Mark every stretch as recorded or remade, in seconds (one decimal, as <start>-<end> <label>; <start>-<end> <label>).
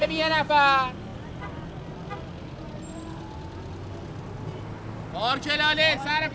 0.0-6.3 recorded